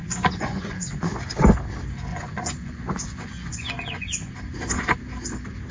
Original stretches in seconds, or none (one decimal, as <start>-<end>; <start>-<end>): 1.1-2.1; 4.3-5.7